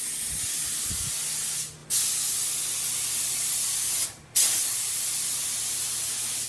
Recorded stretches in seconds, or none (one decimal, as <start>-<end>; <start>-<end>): 0.0-6.5